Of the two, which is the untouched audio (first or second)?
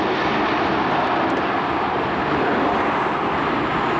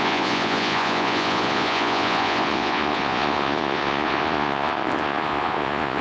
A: first